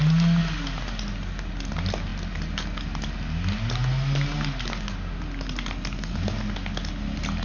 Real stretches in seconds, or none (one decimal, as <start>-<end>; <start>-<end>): 0.0-7.4